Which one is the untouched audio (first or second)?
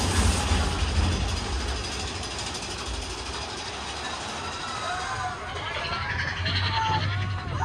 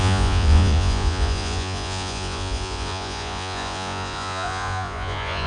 first